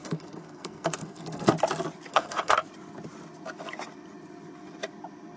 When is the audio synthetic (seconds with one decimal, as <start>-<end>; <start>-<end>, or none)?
0.0-1.5; 2.1-2.7